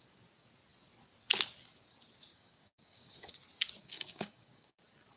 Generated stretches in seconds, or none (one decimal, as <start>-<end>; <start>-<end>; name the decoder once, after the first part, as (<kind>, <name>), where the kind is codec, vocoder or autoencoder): 2.3-3.3 (codec, DAC); 3.8-4.8